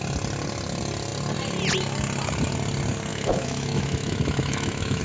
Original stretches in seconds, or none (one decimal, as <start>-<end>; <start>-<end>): 0.0-3.1

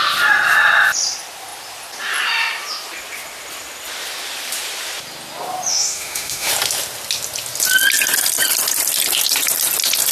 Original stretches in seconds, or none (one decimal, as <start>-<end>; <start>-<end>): 0.0-5.7; 6.5-10.1

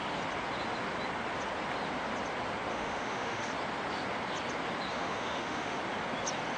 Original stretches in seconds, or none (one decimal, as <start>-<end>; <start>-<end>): 0.0-2.7; 3.5-4.9; 5.8-6.6

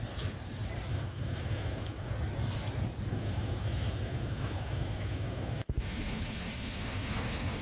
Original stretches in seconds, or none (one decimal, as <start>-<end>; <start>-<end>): 0.0-0.9; 2.1-3.1